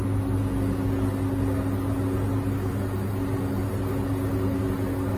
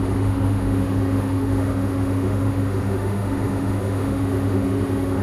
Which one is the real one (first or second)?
first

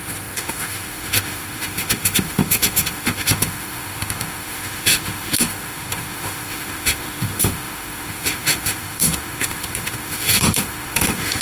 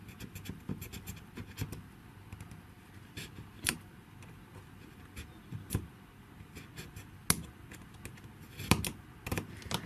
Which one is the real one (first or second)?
second